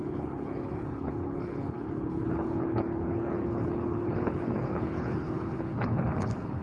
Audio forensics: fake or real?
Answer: fake